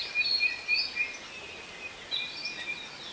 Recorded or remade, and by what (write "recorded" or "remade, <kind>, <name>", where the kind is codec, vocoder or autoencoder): recorded